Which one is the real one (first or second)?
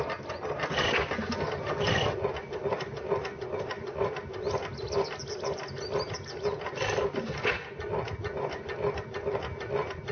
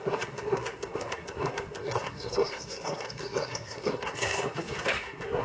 first